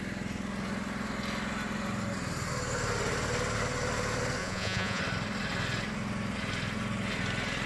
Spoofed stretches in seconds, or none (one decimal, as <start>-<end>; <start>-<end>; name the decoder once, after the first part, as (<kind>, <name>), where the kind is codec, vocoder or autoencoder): 4.4-5.0 (vocoder, Vocos)